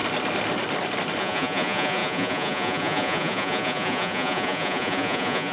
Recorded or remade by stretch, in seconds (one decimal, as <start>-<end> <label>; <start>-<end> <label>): 0.0-1.2 recorded; 1.2-5.5 remade

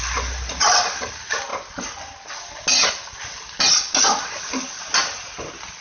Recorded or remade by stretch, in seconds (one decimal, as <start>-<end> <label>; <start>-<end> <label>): 0.0-5.8 recorded

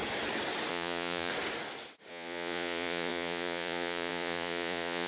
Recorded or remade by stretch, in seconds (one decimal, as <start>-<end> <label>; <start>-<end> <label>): 0.0-0.7 recorded; 0.7-1.3 remade; 1.3-2.1 recorded; 2.1-5.1 remade

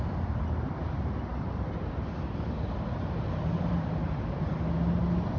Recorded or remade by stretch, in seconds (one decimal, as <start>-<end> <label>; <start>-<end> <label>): 0.0-5.4 recorded

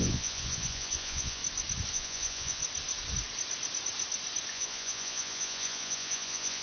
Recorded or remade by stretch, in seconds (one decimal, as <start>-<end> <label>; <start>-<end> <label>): 0.0-1.4 remade; 1.4-1.9 recorded; 1.9-2.6 remade; 2.6-4.5 recorded; 4.5-6.6 remade

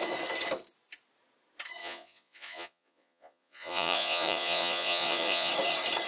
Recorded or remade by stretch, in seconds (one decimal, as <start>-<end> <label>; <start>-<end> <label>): 0.0-1.8 recorded; 1.8-5.5 remade; 5.5-6.1 recorded